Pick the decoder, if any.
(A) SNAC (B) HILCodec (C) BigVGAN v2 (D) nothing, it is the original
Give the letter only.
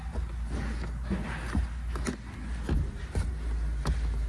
D